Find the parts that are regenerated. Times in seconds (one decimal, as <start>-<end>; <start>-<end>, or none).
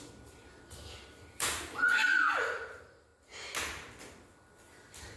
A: 0.0-3.1; 4.4-5.2